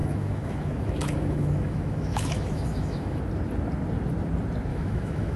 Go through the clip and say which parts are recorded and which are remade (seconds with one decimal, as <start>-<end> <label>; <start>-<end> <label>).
0.0-3.2 remade; 3.2-4.7 recorded; 4.7-5.4 remade